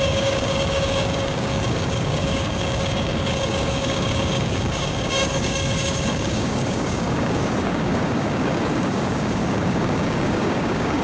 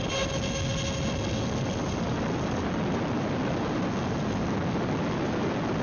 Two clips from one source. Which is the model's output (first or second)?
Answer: first